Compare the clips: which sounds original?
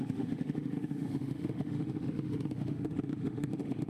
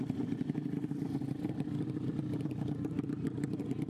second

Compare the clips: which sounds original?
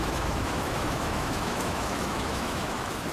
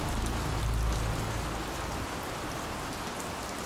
second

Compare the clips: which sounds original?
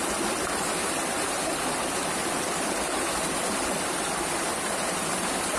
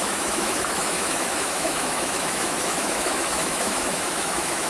first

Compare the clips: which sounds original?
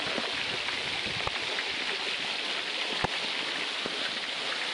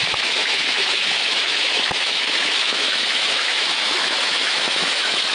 first